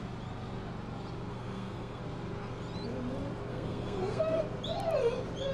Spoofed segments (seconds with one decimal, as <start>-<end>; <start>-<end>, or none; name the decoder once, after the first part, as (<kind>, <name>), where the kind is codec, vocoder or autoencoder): 1.3-2.0 (codec, SNAC); 3.5-4.2